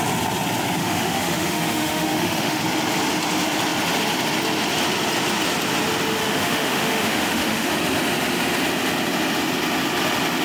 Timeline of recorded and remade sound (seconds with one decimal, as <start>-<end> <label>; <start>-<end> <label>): 0.0-0.8 recorded; 0.8-2.6 remade; 2.6-6.2 recorded; 6.2-7.7 remade; 7.7-10.4 recorded